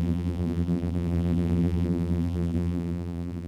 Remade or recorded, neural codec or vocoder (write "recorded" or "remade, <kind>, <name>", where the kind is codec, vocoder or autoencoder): remade, vocoder, BigVGAN v2